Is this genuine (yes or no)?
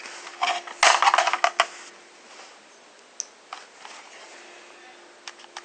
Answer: yes